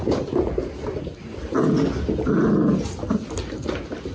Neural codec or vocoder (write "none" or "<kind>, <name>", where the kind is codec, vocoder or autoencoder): none